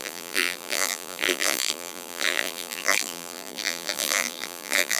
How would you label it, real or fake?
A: fake